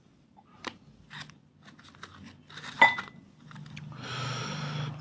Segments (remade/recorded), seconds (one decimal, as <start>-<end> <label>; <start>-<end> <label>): 0.0-5.0 recorded